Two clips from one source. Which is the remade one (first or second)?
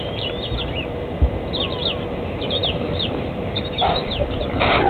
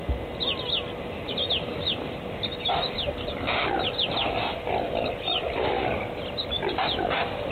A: first